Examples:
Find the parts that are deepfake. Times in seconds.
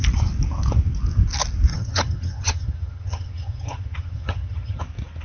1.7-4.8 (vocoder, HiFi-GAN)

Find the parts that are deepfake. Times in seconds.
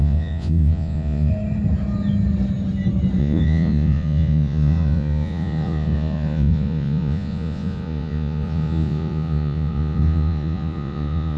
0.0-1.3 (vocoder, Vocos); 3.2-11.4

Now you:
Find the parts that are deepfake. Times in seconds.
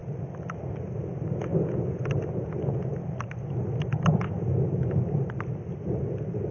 1.5-2.1 (vocoder, Vocos); 4.1-4.6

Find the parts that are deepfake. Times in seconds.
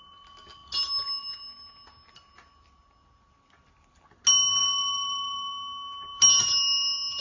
4.5-5.5 (vocoder, BigVGAN v2)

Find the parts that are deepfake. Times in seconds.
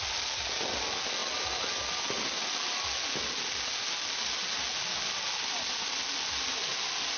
none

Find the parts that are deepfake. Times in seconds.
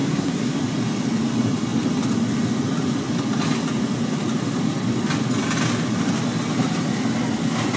0.0-0.6 (codec, SNAC)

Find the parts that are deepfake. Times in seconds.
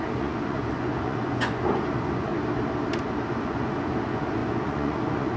0.0-2.3 (vocoder, Vocos); 3.4-5.4